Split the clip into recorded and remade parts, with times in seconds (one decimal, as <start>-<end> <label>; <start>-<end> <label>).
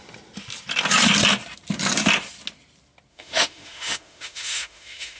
0.0-3.1 recorded; 3.1-5.2 remade